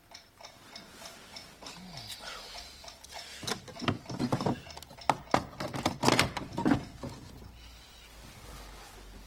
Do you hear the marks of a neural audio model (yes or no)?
no